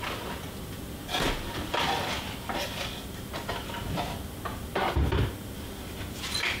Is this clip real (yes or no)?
yes